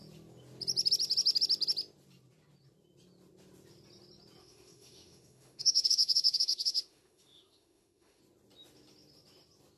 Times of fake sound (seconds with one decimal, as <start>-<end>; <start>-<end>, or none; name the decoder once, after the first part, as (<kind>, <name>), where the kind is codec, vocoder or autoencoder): 4.4-8.2 (autoencoder, DAC-VAE)